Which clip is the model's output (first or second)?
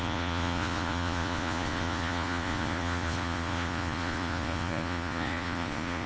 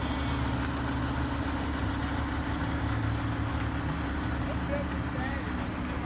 first